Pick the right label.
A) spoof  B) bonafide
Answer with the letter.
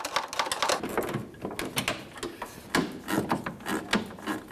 B